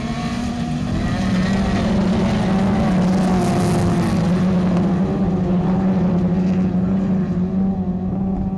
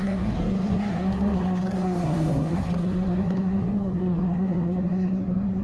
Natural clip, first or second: first